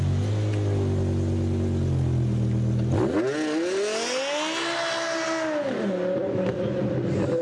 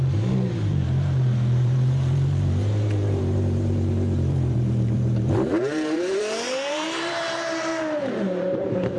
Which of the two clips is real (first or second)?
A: first